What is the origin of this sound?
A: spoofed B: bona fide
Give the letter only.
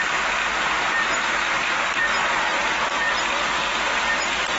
B